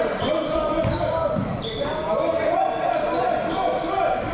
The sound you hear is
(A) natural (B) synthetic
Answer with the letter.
A